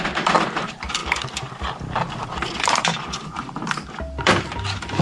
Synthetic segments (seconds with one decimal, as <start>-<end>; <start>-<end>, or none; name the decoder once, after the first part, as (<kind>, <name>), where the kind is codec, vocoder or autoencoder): 0.0-5.0 (vocoder, BigVGAN v2)